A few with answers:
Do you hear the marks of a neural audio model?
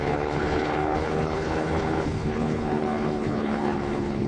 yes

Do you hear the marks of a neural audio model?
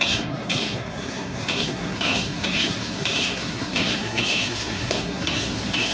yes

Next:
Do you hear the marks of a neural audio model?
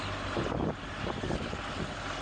no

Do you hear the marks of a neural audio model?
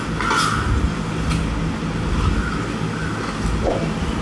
no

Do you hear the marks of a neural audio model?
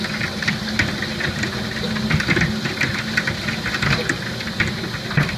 no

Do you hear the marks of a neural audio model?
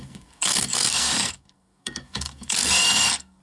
yes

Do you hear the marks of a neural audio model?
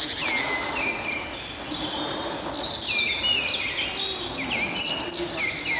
no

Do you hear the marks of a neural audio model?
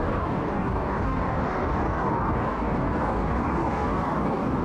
yes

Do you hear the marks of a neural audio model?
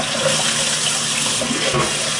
no